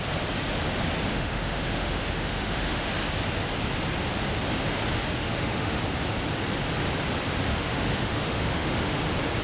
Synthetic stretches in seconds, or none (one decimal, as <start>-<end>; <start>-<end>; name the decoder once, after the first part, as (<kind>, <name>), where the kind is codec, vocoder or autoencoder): 1.1-2.9 (autoencoder, DAC-VAE); 5.2-5.8; 7.5-9.0